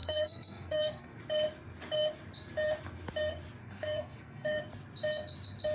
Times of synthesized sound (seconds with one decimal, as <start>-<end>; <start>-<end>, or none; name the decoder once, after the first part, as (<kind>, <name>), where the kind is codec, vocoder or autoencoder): 0.0-1.2 (codec, SNAC); 3.6-4.6

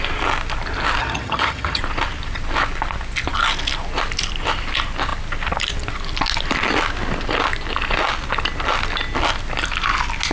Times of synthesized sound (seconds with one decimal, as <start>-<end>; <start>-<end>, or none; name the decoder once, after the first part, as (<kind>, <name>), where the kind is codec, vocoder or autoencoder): 1.0-1.8 (vocoder, HiFi-GAN)

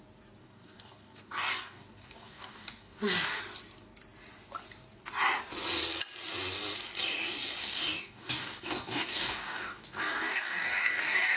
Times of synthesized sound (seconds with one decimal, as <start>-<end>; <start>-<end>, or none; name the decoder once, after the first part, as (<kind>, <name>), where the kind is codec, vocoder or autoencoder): 0.4-3.4 (codec, DAC); 7.6-11.4

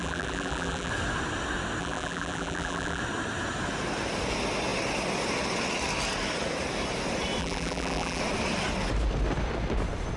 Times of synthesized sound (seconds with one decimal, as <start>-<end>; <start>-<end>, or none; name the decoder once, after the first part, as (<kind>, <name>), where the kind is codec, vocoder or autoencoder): 0.0-0.9 (vocoder, BigVGAN v2); 1.8-3.0; 7.4-8.2

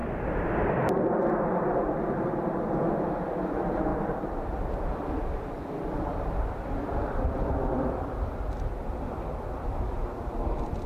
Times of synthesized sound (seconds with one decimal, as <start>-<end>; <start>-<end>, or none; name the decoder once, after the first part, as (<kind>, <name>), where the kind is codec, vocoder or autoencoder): 0.6-10.9 (vocoder, BigVGAN v2)

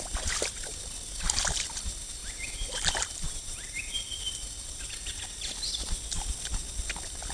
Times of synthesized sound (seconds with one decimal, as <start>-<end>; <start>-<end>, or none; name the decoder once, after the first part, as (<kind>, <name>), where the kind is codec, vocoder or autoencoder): 2.2-4.2 (vocoder, BigVGAN v2)

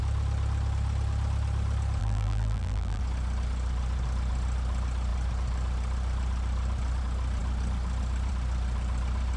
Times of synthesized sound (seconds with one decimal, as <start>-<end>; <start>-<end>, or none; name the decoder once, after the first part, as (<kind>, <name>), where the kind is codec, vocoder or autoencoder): 2.0-3.0 (vocoder, BigVGAN v2)

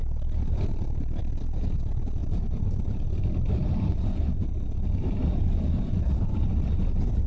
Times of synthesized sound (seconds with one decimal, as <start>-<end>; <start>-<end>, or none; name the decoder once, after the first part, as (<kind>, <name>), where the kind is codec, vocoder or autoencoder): none